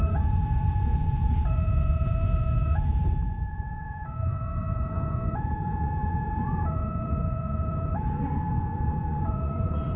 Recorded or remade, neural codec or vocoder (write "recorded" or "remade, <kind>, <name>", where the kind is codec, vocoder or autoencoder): remade, vocoder, Vocos